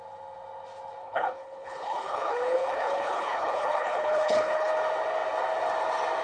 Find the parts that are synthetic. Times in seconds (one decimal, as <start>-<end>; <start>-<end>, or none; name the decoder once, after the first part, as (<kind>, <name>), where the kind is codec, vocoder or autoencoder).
1.0-4.7 (codec, HILCodec)